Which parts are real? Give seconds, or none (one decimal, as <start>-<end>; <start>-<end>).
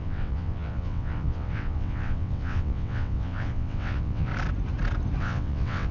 4.3-5.2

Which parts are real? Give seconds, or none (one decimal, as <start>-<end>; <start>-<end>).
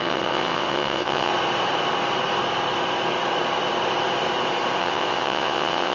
1.3-4.8